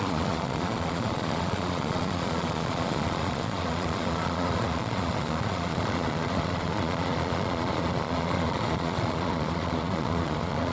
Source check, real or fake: fake